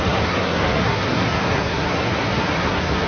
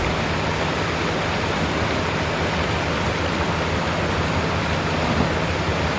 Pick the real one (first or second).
second